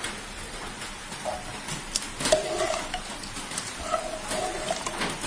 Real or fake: real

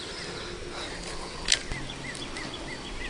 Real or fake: real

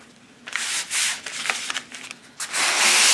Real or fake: real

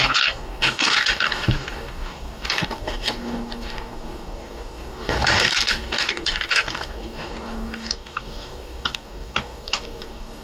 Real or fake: fake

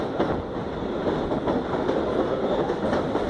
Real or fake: real